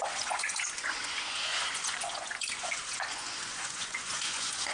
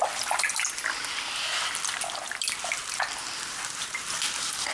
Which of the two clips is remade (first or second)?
first